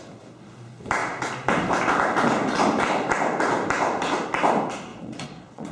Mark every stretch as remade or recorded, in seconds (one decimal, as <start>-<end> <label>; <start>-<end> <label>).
0.0-4.9 recorded; 4.9-5.7 remade